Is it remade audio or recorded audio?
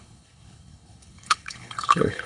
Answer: remade